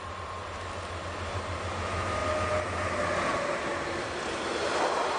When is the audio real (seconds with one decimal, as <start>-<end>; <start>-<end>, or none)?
0.0-5.2